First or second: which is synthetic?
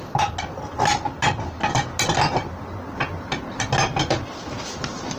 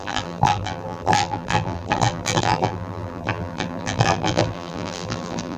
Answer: second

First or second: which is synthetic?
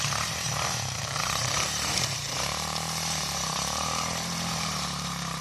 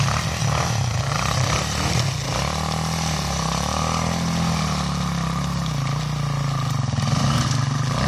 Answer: first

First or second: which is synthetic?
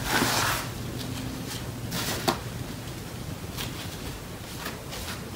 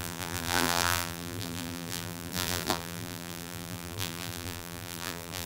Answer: second